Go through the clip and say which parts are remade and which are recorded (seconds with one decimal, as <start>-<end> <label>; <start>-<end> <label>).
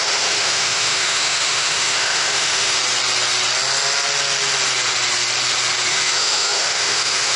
0.0-2.8 remade; 2.8-5.9 recorded; 5.9-7.4 remade